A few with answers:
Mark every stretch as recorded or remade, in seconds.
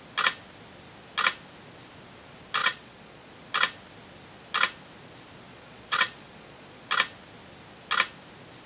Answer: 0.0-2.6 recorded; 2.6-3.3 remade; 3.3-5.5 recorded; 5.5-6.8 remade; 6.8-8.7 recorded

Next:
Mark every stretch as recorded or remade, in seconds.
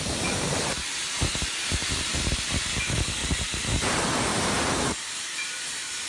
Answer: 0.0-0.8 remade; 0.8-1.7 recorded; 1.7-6.1 remade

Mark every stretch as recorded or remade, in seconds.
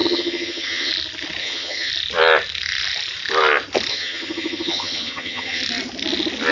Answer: 0.0-0.9 remade; 0.9-1.4 recorded; 1.4-1.9 remade; 1.9-3.9 recorded; 3.9-5.6 remade; 5.6-6.5 recorded